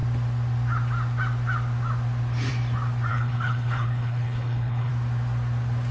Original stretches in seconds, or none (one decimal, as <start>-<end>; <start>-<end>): 0.0-3.1; 4.9-5.9